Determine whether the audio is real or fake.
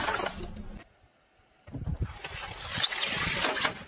real